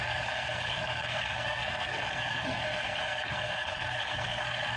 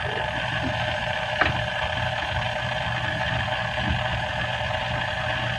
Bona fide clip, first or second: second